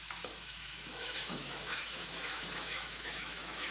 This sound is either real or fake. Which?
fake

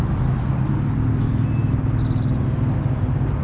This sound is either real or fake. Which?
real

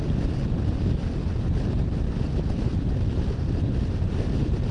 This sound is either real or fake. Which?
real